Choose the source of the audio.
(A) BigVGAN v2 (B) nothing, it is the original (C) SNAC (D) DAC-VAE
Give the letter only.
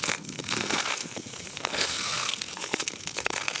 C